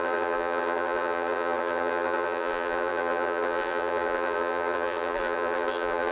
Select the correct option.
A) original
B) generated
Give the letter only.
B